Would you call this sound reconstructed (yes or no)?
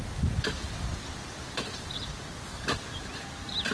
no